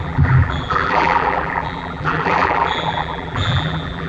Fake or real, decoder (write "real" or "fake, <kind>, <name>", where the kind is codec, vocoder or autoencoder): fake, vocoder, BigVGAN v2